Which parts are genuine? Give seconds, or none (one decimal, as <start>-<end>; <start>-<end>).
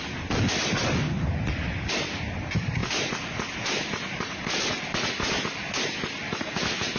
0.0-7.0